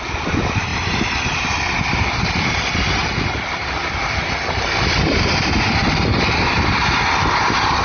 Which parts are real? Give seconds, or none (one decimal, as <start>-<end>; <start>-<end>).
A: 0.0-0.7; 1.5-3.0; 3.8-5.8; 7.1-7.8